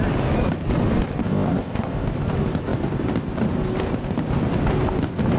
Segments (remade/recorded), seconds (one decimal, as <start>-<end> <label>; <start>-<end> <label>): 0.0-1.2 recorded; 1.2-2.1 remade; 2.1-5.4 recorded